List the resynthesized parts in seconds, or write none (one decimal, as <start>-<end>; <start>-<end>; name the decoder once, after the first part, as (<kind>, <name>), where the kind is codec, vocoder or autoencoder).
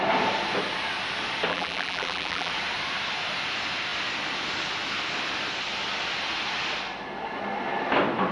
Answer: 1.5-2.5 (vocoder, BigVGAN v2)